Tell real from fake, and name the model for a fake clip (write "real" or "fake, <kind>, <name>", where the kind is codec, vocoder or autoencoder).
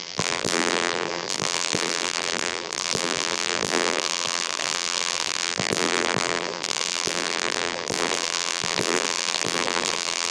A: fake, vocoder, BigVGAN v2